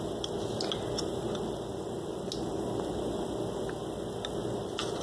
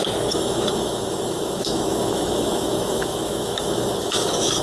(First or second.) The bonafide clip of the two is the first